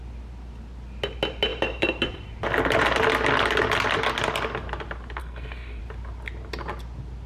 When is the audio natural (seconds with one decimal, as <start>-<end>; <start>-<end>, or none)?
0.0-5.2; 5.8-7.3